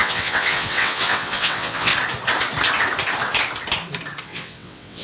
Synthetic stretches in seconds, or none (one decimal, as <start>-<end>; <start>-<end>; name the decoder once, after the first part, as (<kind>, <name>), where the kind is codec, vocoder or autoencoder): 0.0-1.9 (vocoder, WaveNeXt); 4.2-5.0